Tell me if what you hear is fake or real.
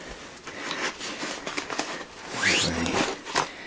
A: real